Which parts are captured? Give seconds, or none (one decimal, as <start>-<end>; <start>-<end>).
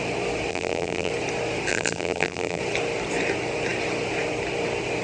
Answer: 0.0-0.5; 1.1-1.7; 2.6-5.0